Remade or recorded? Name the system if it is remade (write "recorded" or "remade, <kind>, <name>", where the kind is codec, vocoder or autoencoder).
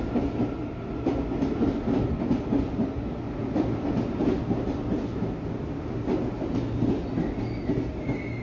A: recorded